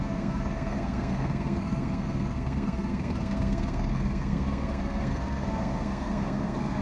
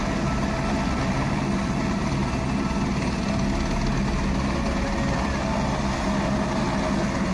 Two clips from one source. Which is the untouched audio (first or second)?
second